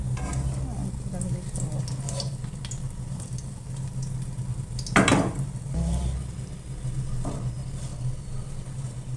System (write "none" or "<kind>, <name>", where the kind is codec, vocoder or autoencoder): none